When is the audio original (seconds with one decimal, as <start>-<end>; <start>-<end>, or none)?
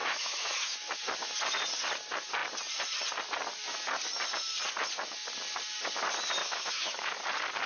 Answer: 1.0-6.4; 7.2-7.7